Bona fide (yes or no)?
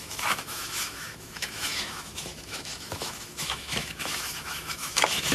no